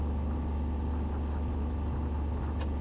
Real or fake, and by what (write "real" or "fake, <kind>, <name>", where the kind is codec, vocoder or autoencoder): real